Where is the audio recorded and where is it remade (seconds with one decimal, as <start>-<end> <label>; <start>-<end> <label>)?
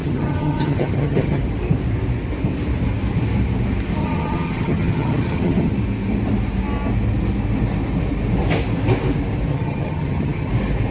0.0-1.4 remade; 1.4-4.0 recorded; 4.0-5.7 remade; 5.7-9.5 recorded; 9.5-10.5 remade; 10.5-10.9 recorded